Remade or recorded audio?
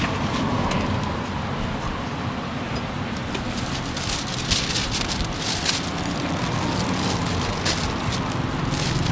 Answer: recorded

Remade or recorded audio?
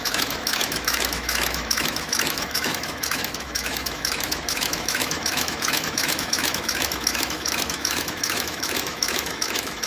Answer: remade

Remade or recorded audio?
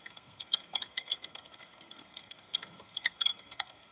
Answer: remade